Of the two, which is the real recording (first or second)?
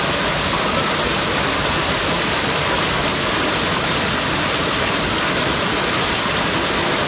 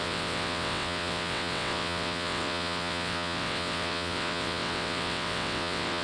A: first